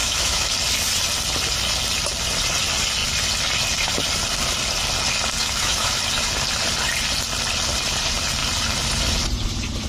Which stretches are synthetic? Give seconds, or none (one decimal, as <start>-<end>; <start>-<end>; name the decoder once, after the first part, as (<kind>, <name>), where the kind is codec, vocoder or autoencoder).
0.0-0.5 (autoencoder, DAC-VAE); 5.4-6.0